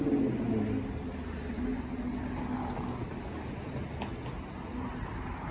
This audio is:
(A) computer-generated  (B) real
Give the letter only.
B